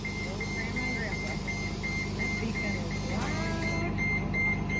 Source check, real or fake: real